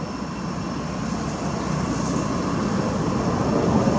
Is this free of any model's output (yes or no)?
yes